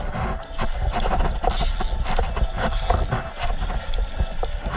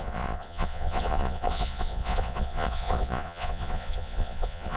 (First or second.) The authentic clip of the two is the first